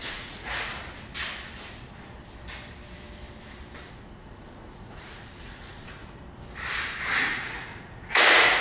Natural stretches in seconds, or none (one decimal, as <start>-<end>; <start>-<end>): 0.7-3.9; 6.0-7.2